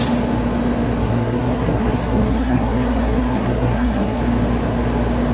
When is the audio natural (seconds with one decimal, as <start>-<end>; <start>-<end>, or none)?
0.0-1.0; 4.2-5.3